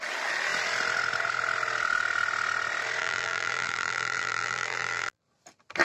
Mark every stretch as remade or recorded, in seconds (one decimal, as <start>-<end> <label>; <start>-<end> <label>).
0.0-3.0 recorded; 3.0-5.2 remade; 5.2-5.8 recorded